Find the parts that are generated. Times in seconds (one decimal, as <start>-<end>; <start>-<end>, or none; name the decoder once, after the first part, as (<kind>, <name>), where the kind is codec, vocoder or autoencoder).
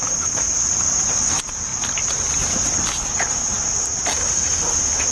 none